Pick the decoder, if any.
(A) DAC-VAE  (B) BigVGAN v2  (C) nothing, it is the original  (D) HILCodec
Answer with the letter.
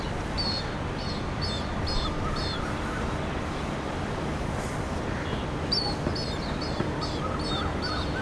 C